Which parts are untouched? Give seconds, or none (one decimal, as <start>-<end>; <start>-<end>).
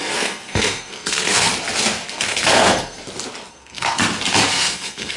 1.5-2.1; 3.0-3.5; 4.0-4.5